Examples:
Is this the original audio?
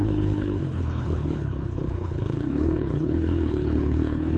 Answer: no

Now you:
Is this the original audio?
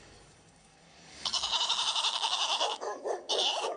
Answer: no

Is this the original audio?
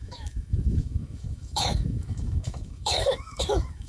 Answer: no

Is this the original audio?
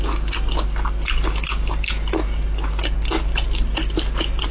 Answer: yes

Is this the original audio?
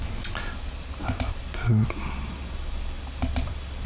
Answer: yes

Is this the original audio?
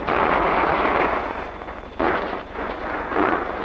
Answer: no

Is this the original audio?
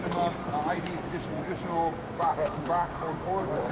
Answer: no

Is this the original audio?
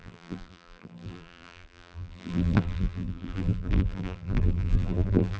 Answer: no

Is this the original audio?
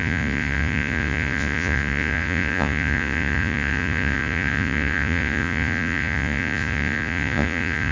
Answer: no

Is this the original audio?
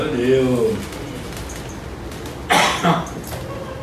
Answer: yes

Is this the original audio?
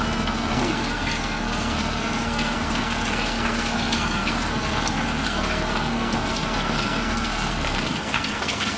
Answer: no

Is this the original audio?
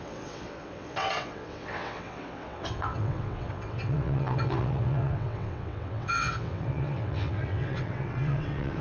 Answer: no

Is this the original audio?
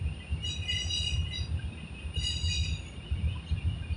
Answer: yes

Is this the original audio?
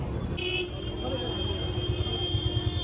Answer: yes